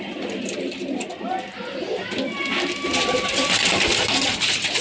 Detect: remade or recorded recorded